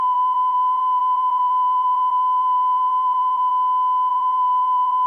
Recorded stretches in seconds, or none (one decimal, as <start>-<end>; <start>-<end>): 3.5-4.1